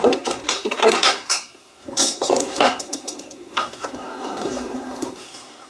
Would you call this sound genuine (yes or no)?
no